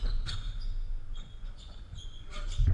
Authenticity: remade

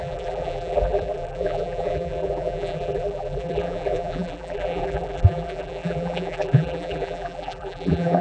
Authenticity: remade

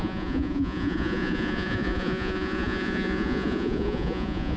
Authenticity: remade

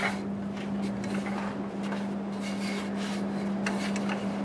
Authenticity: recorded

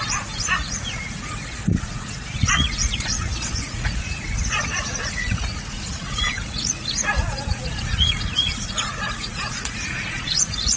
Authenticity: remade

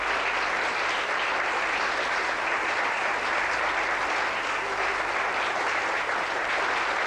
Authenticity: recorded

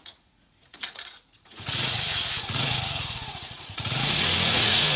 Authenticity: remade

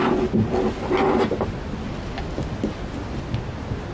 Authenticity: recorded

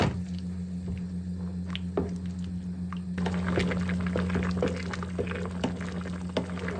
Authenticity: recorded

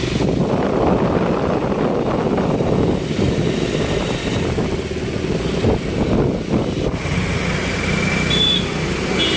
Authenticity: recorded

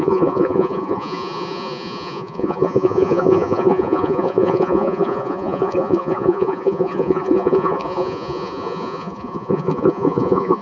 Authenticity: remade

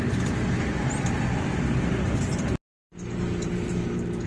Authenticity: recorded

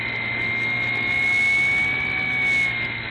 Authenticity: recorded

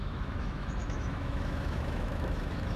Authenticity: remade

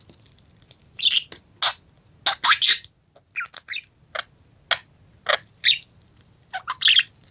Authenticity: recorded